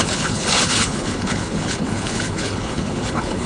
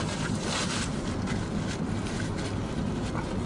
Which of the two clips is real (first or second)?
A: second